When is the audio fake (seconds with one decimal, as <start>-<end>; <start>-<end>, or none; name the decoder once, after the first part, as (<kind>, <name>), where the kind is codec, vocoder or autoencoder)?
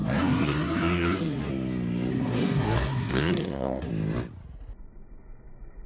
0.0-1.5 (codec, SNAC); 2.1-3.9